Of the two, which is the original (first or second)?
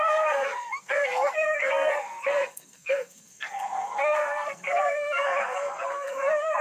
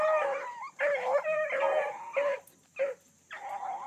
second